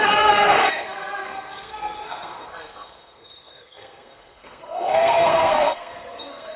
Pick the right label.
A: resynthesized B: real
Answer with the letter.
A